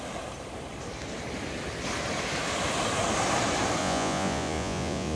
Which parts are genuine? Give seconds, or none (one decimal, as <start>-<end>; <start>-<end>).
0.0-3.8